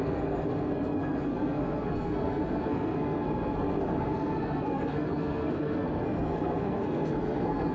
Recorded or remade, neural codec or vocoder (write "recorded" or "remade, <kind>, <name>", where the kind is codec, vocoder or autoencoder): remade, codec, SNAC